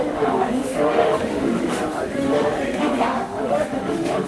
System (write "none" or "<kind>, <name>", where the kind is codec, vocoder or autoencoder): autoencoder, DAC-VAE